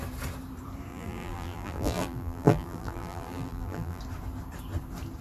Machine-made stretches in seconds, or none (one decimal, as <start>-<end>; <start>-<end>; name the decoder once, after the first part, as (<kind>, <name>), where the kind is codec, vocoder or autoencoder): 0.9-4.0 (vocoder, BigVGAN v2)